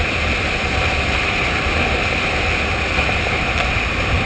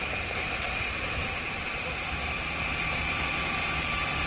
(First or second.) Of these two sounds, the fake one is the second